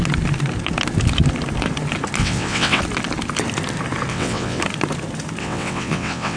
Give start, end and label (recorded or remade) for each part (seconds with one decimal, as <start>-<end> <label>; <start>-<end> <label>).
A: 0.0-2.2 recorded; 2.2-2.8 remade; 2.8-4.1 recorded; 4.1-4.6 remade; 4.6-5.4 recorded; 5.4-6.4 remade